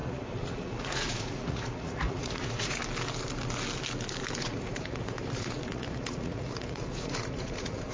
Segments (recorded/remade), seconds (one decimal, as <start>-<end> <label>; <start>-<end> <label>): 0.0-2.8 remade; 2.8-4.4 recorded; 4.4-7.9 remade